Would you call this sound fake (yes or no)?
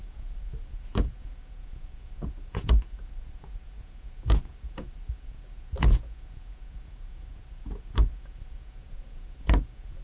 yes